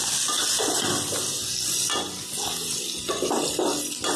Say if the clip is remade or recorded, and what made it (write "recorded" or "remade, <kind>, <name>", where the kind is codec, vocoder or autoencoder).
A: recorded